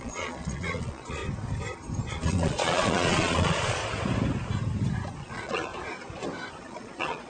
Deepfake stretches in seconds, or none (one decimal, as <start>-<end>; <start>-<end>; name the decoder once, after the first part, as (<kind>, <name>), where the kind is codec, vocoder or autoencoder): 0.0-1.2 (vocoder, Vocos); 2.1-3.8; 5.2-5.7; 6.5-7.3